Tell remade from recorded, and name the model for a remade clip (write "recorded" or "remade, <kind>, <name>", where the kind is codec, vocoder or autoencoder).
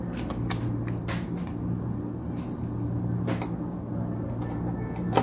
recorded